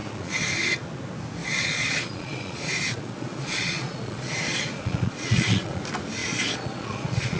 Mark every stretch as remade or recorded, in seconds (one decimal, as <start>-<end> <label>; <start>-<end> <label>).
0.0-0.5 remade; 0.5-1.4 recorded; 1.4-5.8 remade; 5.8-6.2 recorded; 6.2-7.4 remade